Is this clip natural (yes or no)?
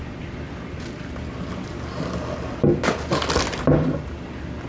yes